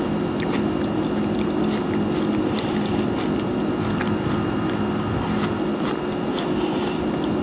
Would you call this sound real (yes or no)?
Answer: yes